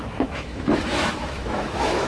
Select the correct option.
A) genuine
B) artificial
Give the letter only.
B